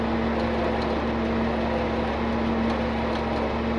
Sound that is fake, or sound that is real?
real